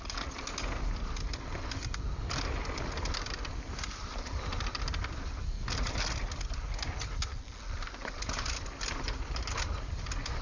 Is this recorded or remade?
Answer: recorded